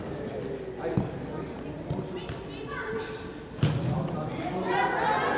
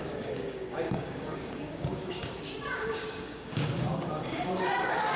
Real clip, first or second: first